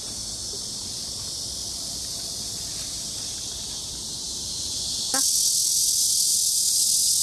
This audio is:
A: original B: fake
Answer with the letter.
A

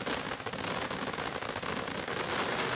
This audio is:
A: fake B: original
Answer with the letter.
B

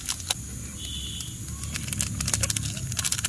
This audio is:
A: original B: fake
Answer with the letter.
A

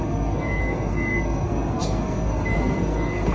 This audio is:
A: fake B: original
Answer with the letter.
A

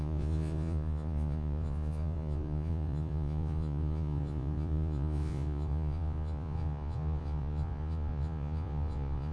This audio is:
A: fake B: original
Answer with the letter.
A